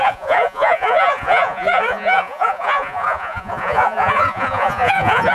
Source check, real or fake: fake